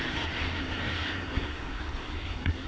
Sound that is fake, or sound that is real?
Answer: fake